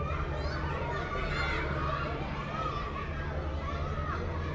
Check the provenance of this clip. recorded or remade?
recorded